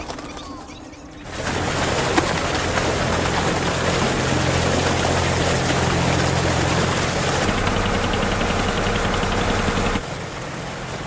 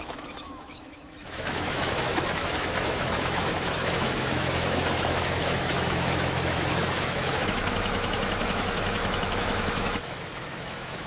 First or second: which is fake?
second